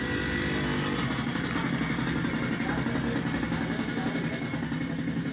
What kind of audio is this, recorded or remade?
recorded